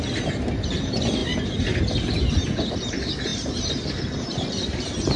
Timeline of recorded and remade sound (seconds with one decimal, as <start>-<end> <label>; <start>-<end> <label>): 0.0-5.2 recorded